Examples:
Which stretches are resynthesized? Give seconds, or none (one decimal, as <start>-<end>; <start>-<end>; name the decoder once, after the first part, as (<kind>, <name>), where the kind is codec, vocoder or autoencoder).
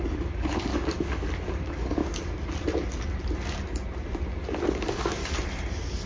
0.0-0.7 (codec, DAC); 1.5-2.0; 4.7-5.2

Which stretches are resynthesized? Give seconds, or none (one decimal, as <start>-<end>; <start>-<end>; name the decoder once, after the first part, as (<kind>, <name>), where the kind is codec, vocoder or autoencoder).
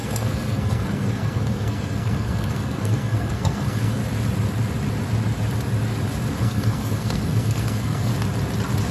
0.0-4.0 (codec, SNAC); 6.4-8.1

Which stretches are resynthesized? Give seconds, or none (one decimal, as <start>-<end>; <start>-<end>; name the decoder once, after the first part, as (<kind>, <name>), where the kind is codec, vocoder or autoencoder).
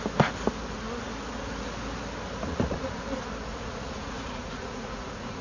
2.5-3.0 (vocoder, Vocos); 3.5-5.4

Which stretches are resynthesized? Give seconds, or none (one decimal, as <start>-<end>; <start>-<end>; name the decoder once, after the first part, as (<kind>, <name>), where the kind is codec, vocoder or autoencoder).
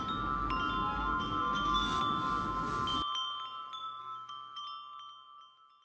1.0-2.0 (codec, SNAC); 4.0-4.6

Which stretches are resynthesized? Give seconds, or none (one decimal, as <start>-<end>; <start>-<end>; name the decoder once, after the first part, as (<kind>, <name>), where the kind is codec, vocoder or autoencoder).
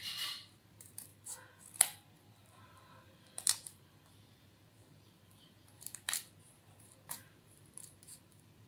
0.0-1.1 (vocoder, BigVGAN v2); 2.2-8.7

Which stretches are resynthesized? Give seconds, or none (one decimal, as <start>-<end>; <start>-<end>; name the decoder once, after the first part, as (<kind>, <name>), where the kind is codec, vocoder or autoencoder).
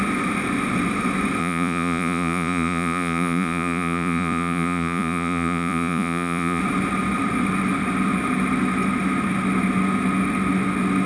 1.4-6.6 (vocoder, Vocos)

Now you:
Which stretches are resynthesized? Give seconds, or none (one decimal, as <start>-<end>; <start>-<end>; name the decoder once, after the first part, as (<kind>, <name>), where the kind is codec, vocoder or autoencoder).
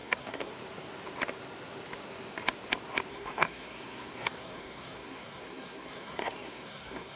0.0-0.5 (codec, SNAC); 3.1-7.2